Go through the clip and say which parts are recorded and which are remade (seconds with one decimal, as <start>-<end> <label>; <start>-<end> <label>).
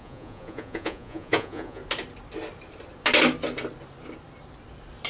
0.0-1.8 remade; 1.8-5.1 recorded